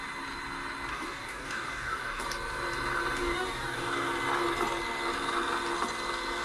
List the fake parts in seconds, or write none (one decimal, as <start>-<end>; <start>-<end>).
0.9-2.2; 3.2-4.1